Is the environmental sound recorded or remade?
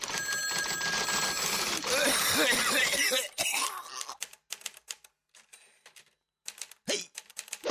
recorded